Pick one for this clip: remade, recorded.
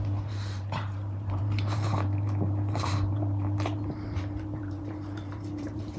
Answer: remade